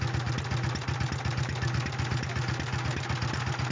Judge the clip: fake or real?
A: real